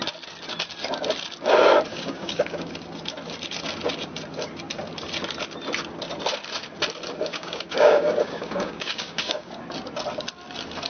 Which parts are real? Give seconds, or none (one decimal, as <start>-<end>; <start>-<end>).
0.0-1.9; 2.7-7.3; 9.5-10.9